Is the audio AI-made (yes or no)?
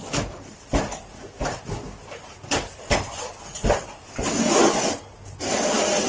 no